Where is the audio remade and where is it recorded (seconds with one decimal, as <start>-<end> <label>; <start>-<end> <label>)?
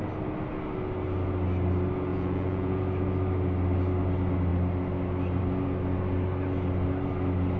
0.0-2.1 recorded; 2.1-2.8 remade; 2.8-7.6 recorded